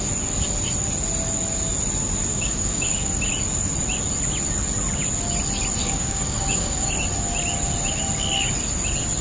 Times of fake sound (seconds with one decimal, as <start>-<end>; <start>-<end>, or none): 2.3-3.1; 5.8-6.9